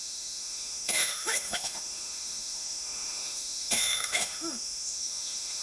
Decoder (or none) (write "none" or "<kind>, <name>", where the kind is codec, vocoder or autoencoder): autoencoder, DAC-VAE